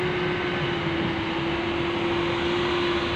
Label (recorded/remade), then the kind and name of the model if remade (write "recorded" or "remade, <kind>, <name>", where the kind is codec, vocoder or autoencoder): recorded